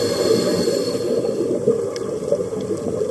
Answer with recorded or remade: recorded